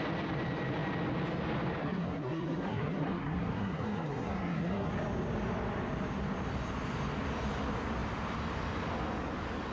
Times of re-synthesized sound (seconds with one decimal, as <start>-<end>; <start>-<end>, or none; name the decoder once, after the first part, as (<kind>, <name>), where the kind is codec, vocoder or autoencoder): 1.8-4.9 (codec, SNAC)